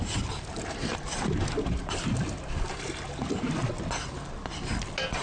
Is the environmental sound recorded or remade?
recorded